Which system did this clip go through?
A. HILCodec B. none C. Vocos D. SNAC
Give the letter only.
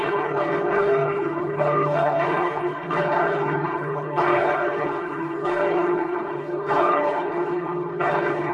A